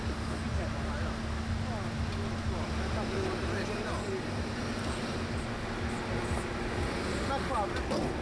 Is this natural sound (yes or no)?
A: yes